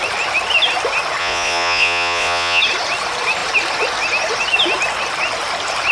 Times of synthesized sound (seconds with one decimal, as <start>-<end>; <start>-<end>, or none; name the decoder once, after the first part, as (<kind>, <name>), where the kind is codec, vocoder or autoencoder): 1.2-2.6 (vocoder, Vocos)